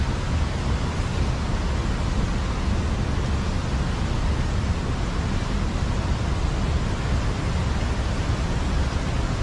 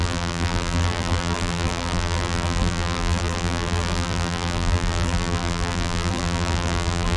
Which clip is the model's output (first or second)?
second